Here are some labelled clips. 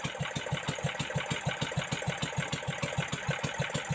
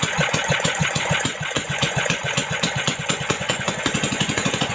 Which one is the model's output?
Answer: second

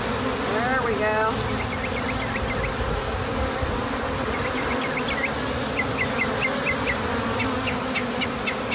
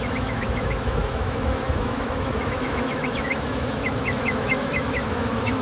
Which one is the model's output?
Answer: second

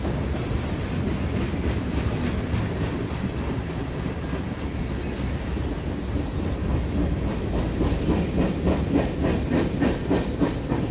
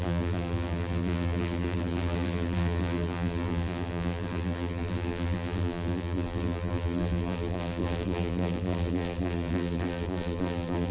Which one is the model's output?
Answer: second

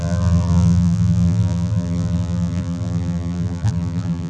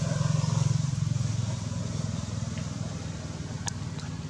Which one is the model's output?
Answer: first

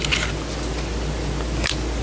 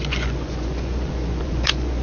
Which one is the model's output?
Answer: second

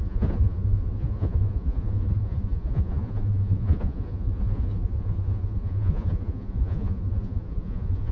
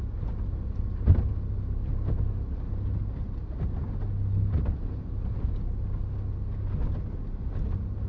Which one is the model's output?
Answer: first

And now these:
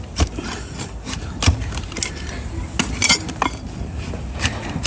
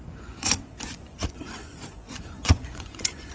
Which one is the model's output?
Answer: second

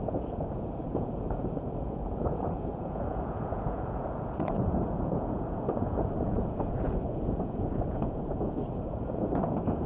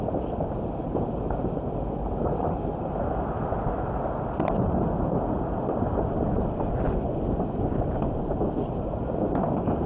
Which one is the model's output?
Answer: first